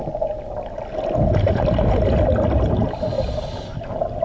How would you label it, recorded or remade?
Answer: recorded